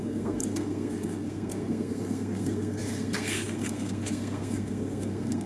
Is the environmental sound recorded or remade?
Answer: remade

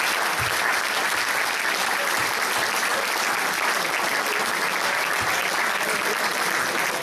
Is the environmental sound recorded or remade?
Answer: recorded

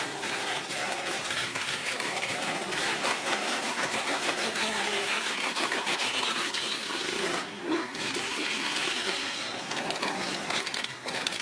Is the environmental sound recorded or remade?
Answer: remade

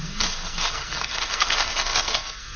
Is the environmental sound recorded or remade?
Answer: remade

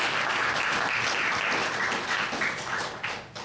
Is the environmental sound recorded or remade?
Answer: recorded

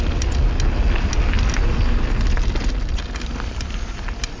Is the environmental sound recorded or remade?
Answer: recorded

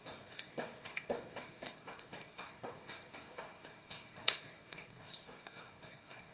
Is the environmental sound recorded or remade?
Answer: remade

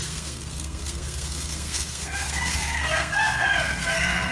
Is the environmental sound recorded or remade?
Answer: remade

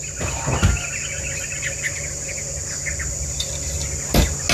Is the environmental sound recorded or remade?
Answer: recorded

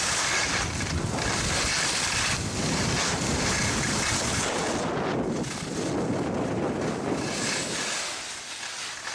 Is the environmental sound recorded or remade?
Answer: recorded